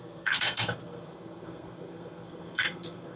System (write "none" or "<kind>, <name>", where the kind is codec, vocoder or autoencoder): codec, SNAC